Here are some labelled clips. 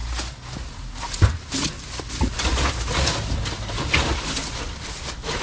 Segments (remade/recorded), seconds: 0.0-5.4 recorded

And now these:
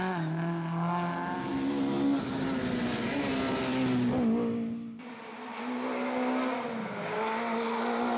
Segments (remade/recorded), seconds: 0.0-8.2 recorded

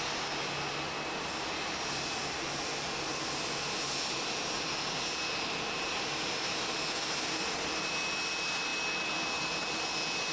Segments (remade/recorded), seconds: 0.0-10.3 recorded

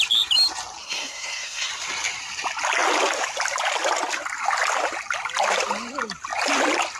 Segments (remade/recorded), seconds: 0.0-0.8 recorded; 0.8-1.7 remade; 1.7-7.0 recorded